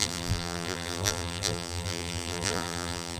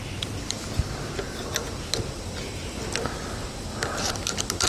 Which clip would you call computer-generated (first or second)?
first